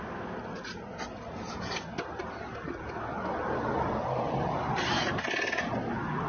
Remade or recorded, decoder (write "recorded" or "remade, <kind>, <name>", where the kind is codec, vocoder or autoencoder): recorded